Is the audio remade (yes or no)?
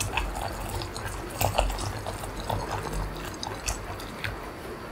no